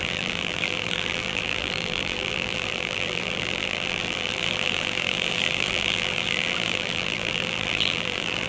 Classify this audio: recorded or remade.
remade